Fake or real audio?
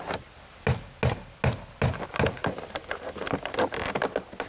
real